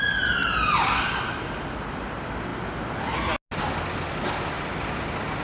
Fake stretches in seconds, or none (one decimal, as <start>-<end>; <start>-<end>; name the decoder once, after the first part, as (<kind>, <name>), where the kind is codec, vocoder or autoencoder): none

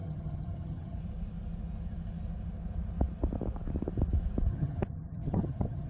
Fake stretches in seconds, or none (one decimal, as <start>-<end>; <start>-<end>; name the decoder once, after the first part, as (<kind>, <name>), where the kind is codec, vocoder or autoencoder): 0.0-1.0 (vocoder, HiFi-GAN); 4.5-5.9

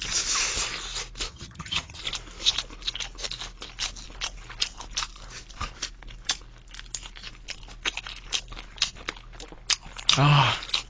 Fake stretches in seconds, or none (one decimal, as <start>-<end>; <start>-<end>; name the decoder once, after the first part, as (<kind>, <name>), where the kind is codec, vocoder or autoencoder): 1.3-2.0 (vocoder, HiFi-GAN)

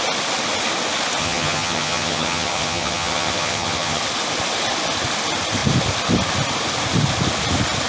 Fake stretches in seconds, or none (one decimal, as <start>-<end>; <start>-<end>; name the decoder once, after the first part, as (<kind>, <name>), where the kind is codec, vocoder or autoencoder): 1.2-4.0 (vocoder, HiFi-GAN)

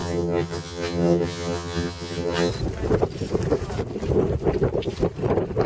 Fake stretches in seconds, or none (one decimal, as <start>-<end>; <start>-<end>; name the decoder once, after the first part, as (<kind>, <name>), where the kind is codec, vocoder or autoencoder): 0.0-2.5 (vocoder, HiFi-GAN)